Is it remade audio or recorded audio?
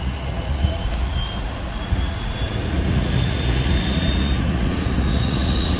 remade